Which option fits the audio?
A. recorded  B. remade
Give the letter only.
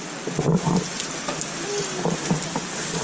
A